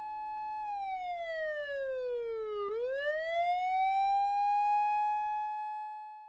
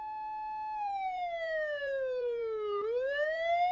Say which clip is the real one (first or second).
first